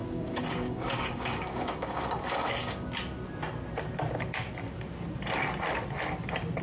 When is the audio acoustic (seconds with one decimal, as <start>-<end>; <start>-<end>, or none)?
2.9-6.6